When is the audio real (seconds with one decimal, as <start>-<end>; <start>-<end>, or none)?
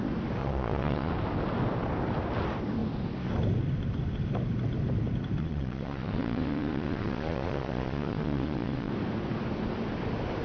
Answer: 0.0-0.4; 1.1-5.4; 8.9-10.4